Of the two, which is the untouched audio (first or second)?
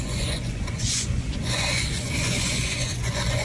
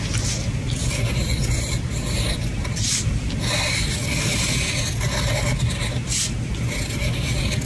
second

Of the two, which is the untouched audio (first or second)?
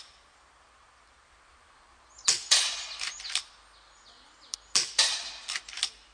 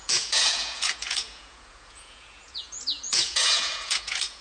first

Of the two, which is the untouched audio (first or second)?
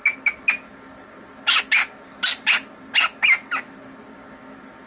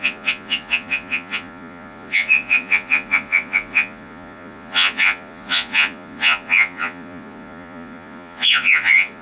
first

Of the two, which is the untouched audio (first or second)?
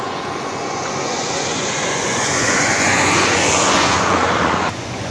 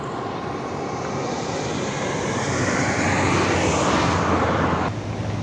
second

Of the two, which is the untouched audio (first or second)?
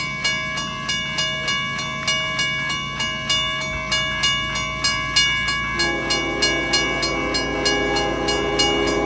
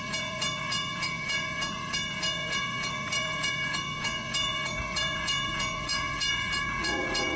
first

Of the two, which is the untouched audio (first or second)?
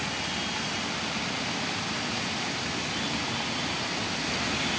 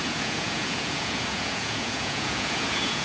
first